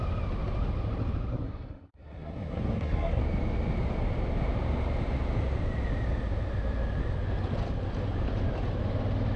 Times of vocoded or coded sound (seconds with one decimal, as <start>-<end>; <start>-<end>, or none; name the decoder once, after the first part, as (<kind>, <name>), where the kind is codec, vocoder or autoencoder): 1.3-3.2 (codec, SNAC)